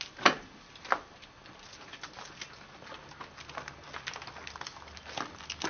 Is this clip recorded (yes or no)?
yes